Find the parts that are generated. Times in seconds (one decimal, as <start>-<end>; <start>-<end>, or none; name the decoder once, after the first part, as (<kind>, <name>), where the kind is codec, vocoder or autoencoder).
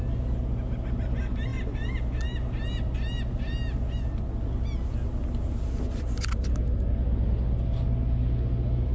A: none